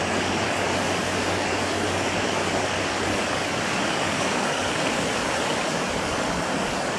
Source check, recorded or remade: remade